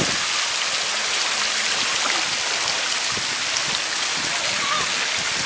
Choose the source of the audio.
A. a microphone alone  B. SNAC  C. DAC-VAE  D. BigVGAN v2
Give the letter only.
A